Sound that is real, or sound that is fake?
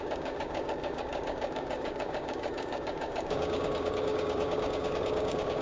fake